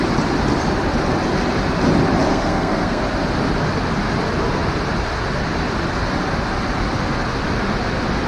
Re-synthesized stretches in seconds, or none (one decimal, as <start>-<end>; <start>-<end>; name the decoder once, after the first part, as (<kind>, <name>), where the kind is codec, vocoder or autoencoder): 2.3-3.0 (codec, SNAC)